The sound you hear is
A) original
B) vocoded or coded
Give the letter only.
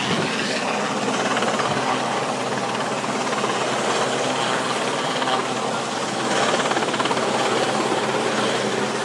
A